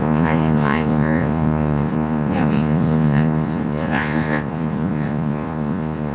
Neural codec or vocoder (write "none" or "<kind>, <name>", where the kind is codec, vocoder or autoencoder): vocoder, Vocos